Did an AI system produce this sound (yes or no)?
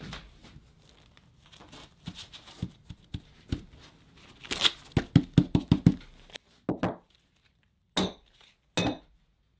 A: no